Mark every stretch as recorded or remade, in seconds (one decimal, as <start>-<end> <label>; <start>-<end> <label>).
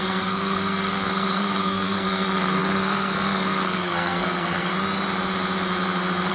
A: 0.0-4.7 remade; 4.7-6.3 recorded